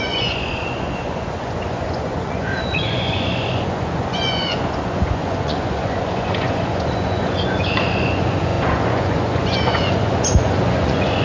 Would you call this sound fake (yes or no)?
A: yes